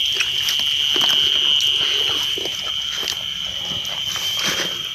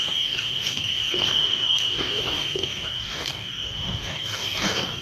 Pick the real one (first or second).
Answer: first